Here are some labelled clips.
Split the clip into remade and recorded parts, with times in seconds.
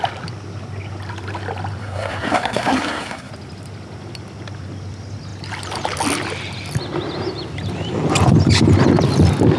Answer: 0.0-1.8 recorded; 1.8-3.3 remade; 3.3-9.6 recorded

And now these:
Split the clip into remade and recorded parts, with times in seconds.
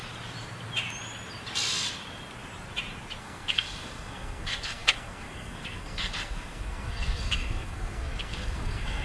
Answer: 0.0-3.2 recorded; 3.2-9.0 remade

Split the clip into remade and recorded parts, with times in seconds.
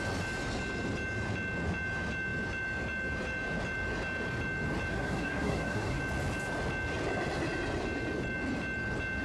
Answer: 0.0-4.9 recorded; 4.9-6.0 remade; 6.0-9.2 recorded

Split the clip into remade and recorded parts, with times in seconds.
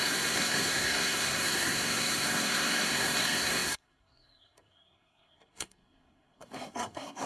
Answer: 0.0-7.3 remade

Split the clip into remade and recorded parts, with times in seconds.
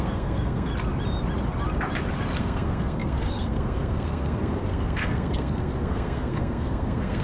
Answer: 0.0-0.7 remade; 0.7-2.4 recorded; 2.4-7.2 remade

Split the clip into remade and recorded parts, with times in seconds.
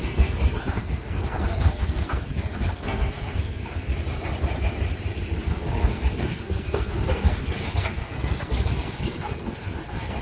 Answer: 0.0-3.9 remade; 3.9-5.4 recorded; 5.4-10.2 remade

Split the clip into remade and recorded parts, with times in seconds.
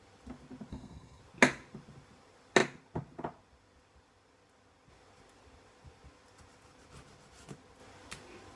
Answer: 0.0-0.7 recorded; 0.7-1.2 remade; 1.2-8.6 recorded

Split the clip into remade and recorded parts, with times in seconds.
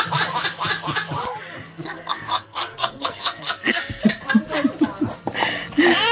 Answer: 0.0-1.7 recorded; 1.7-4.0 remade; 4.0-6.1 recorded